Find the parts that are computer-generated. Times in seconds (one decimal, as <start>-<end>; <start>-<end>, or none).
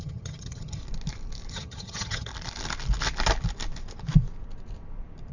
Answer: 0.0-0.8; 1.5-2.3